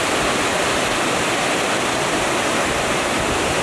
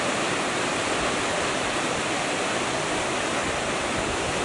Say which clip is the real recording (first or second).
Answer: first